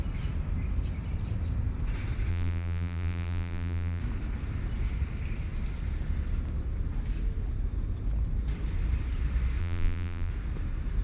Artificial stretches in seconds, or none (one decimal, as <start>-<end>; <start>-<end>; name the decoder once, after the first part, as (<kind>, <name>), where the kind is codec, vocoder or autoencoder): 2.3-4.0 (vocoder, BigVGAN v2); 9.6-10.3